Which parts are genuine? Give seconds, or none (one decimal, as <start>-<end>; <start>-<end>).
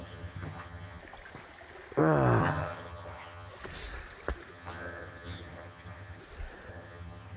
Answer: 1.0-2.4; 3.5-4.5; 6.2-6.7